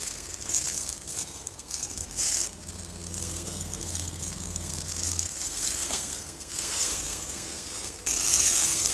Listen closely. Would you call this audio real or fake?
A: fake